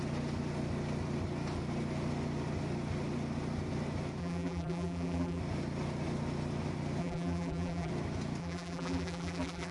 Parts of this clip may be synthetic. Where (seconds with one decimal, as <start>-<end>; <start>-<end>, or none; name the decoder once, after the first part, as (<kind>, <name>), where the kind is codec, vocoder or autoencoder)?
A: 4.2-5.4 (vocoder, BigVGAN v2); 7.0-7.9; 8.4-9.7